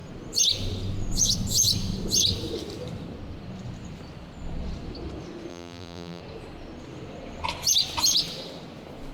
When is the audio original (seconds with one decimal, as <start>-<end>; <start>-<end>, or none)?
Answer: 0.0-5.5; 6.2-9.1